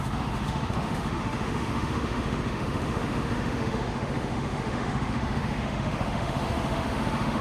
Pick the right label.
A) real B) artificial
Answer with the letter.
B